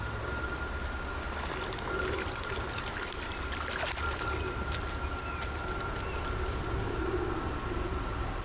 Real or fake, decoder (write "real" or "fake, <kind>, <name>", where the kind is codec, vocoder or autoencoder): real